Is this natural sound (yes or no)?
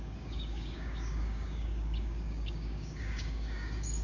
no